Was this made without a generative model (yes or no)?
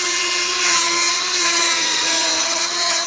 no